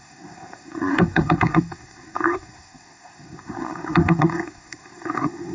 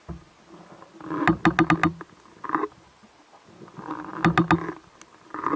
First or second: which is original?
second